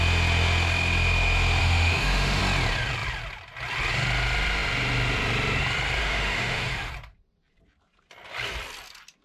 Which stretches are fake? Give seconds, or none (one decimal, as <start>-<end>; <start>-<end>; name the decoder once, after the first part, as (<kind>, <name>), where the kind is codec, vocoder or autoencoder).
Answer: 1.6-2.4 (autoencoder, DAC-VAE); 6.0-6.9